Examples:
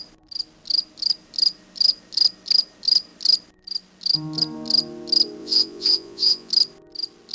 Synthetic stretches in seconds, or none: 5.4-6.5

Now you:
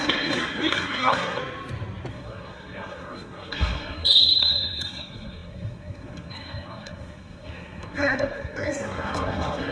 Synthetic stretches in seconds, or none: 0.0-1.4; 2.1-9.7

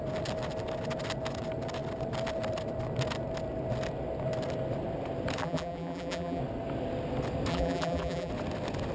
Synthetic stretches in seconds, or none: 5.4-6.4; 7.5-8.3

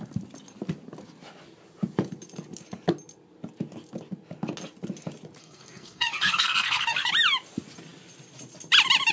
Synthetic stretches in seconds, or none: 5.4-7.1

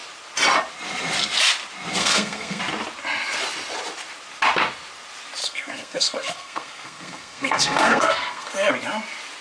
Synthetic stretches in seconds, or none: 2.0-2.6; 5.4-8.7

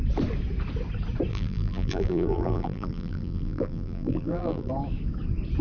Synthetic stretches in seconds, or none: 1.3-4.7

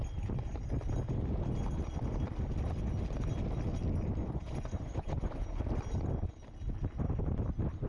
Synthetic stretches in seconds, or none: 4.2-5.6

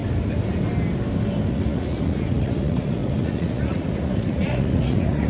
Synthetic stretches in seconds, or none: 1.5-5.3